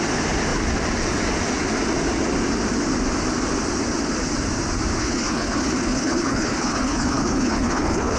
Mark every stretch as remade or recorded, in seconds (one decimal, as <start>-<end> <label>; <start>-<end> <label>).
0.0-5.0 recorded; 5.0-8.2 remade